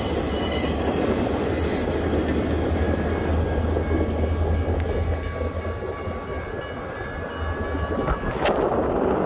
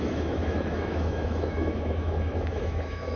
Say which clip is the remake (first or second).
second